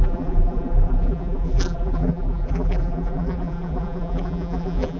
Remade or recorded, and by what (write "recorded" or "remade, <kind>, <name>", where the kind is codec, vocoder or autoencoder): remade, vocoder, BigVGAN v2